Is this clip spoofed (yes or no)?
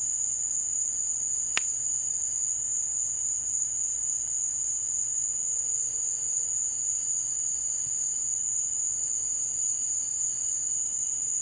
no